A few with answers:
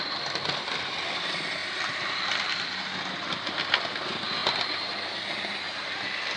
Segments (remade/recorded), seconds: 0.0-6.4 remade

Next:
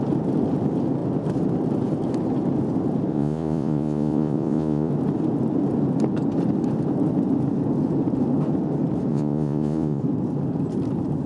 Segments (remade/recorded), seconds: 0.0-3.1 recorded; 3.1-4.9 remade; 4.9-9.1 recorded; 9.1-10.0 remade; 10.0-11.3 recorded

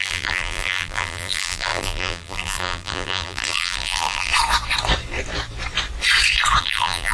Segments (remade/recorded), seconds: 0.0-4.3 remade; 4.3-6.6 recorded; 6.6-7.1 remade

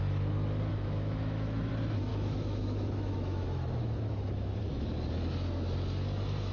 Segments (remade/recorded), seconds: 0.0-0.7 recorded; 0.7-1.7 remade; 1.7-2.1 recorded; 2.1-4.6 remade; 4.6-6.5 recorded

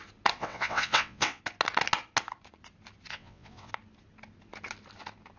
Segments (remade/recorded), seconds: 0.0-0.4 recorded; 0.4-1.4 remade; 1.4-3.1 recorded; 3.1-3.7 remade; 3.7-5.4 recorded

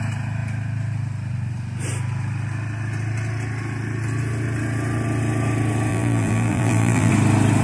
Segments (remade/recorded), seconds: 0.0-5.9 recorded; 5.9-7.1 remade; 7.1-7.6 recorded

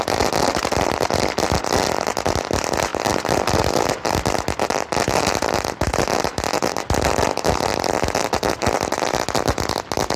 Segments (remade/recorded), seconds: 0.0-10.2 recorded